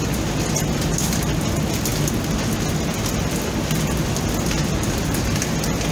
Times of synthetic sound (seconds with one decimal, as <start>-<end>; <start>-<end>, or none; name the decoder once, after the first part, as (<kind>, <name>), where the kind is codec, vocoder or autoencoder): none

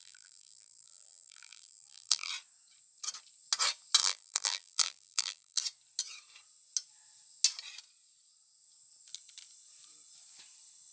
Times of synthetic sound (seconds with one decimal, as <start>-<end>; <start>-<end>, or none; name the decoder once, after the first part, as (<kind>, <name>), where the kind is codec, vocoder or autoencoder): 0.0-2.3 (vocoder, BigVGAN v2); 4.0-5.6